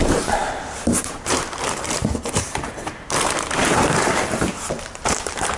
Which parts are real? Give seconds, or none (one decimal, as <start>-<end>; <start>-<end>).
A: none